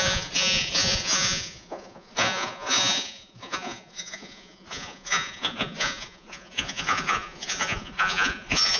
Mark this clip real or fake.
fake